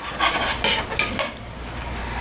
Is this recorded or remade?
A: recorded